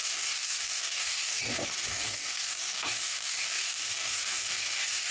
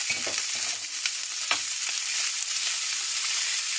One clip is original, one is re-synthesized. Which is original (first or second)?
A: second